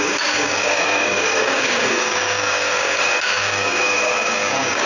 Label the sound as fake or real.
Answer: fake